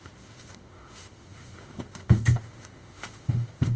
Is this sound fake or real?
fake